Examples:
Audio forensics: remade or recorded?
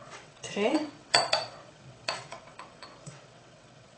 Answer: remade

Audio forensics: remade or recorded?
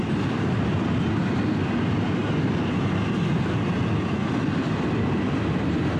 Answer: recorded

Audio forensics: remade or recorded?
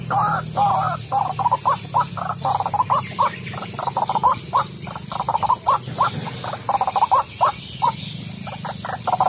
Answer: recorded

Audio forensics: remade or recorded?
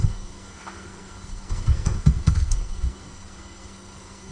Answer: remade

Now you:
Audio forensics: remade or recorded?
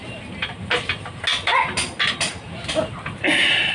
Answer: recorded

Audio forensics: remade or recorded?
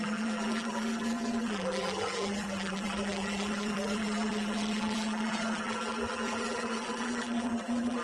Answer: remade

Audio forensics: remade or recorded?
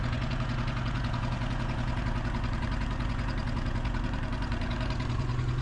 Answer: remade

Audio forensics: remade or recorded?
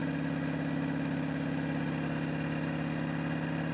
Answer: recorded